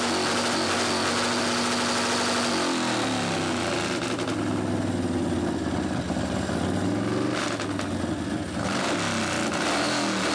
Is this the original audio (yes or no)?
yes